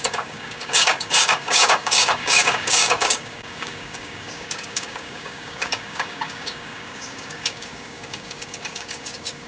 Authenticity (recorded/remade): remade